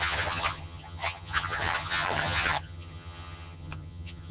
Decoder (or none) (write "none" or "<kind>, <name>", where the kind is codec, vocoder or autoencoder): vocoder, HiFi-GAN